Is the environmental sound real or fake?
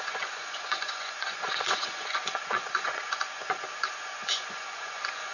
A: fake